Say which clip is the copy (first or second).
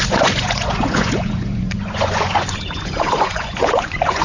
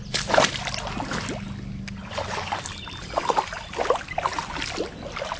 first